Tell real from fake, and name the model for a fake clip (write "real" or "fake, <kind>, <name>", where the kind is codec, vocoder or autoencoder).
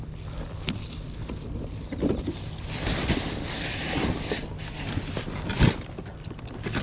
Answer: real